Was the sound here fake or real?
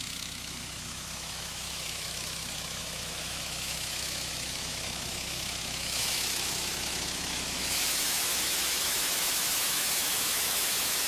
fake